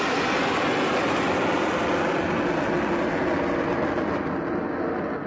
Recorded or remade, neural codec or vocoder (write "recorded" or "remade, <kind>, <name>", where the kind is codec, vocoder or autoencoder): recorded